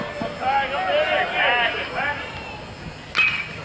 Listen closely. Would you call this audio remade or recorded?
recorded